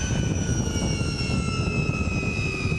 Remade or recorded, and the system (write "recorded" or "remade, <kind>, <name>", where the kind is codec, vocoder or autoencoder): recorded